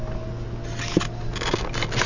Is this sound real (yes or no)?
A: yes